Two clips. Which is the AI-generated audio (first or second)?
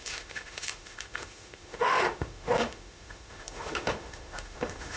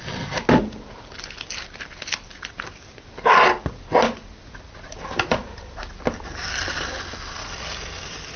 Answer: first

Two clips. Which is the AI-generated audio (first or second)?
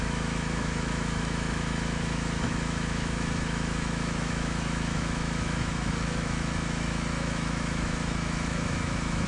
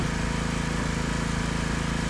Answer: first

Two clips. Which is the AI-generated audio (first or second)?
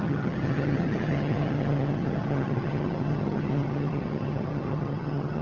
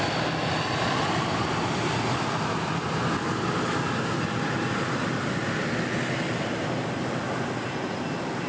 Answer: first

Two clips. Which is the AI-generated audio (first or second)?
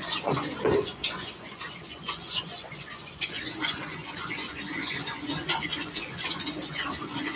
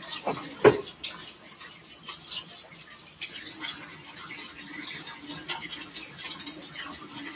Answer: first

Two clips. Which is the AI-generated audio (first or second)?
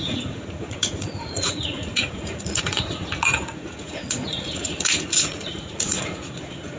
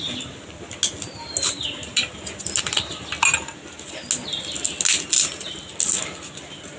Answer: first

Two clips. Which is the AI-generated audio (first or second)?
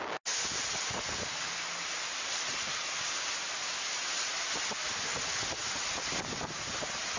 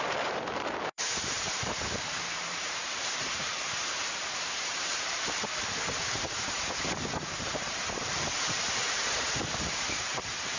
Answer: second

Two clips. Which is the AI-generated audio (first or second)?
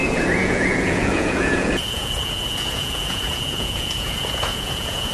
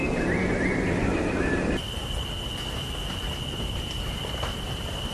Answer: first